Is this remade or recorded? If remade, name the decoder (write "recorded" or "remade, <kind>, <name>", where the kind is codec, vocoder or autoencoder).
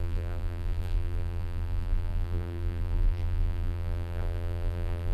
remade, vocoder, BigVGAN v2